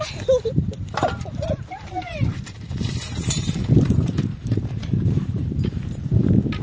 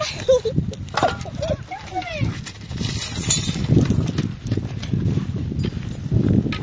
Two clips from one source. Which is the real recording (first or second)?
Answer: second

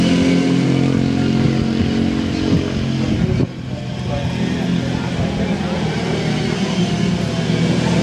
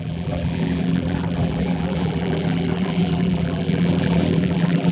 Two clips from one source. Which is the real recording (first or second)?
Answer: first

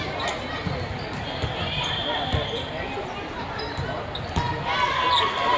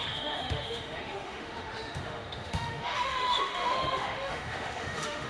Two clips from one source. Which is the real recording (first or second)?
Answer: first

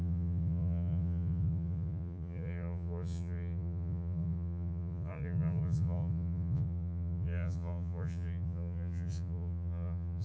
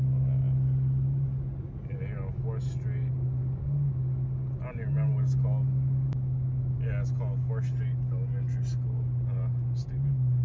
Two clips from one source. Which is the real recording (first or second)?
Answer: second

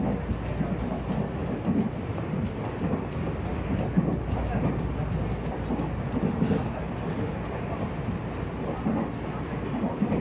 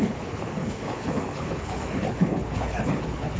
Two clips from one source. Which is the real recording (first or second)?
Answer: first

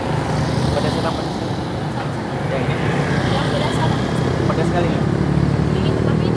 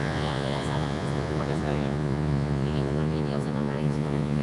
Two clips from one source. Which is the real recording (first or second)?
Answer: first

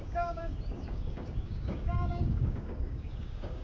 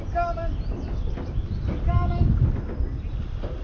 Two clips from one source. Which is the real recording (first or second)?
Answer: second